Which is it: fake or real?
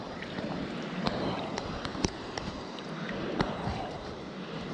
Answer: fake